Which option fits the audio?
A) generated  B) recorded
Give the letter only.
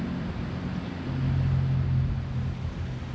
B